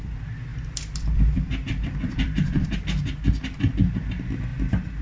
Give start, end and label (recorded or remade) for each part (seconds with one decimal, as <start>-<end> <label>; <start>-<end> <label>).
0.0-0.5 recorded; 0.5-2.8 remade; 2.8-5.0 recorded